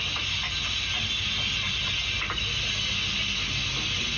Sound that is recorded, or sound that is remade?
recorded